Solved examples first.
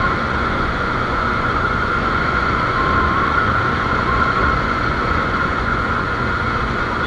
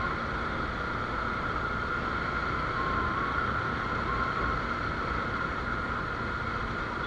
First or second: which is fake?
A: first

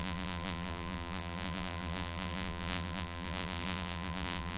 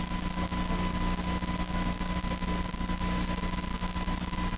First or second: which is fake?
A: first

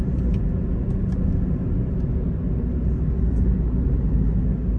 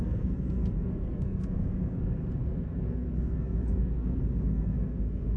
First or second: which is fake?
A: second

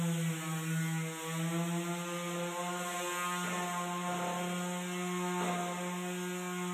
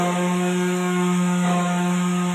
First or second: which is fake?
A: second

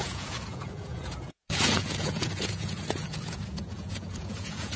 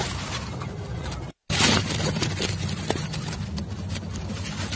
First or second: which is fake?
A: first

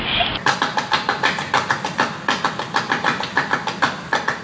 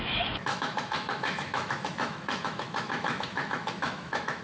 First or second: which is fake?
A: second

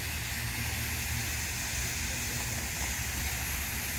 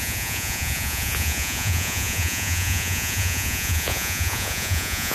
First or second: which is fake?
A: second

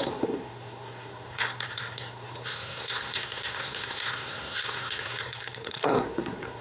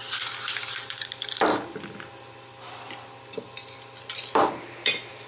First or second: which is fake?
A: first